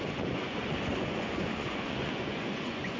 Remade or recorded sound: remade